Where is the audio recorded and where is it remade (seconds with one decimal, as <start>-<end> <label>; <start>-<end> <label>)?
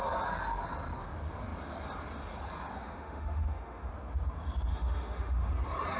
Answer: 0.0-2.8 recorded; 2.8-3.9 remade; 3.9-4.7 recorded; 4.7-5.5 remade; 5.5-6.0 recorded